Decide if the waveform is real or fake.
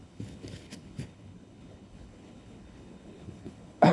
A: fake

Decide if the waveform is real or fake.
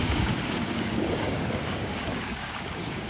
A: fake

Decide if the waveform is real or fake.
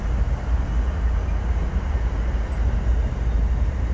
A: real